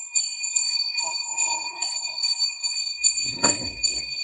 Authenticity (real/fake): fake